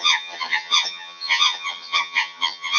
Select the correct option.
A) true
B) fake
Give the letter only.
B